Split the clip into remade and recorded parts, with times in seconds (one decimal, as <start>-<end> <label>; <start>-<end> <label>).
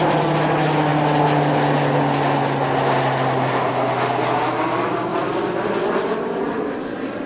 0.0-7.3 recorded